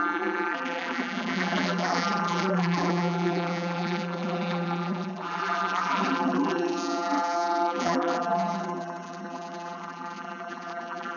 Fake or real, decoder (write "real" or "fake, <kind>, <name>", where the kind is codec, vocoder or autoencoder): fake, vocoder, BigVGAN v2